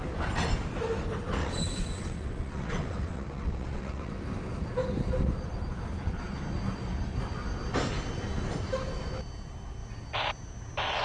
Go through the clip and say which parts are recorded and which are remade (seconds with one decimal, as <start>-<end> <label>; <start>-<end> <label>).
0.0-1.4 recorded; 1.4-4.1 remade; 4.1-11.0 recorded